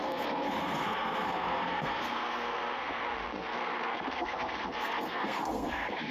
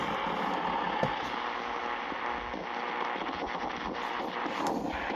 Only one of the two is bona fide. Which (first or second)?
second